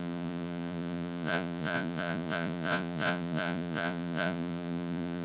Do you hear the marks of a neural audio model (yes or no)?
yes